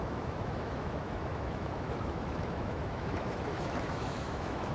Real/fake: fake